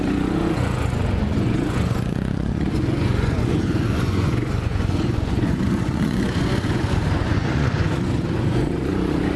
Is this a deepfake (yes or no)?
yes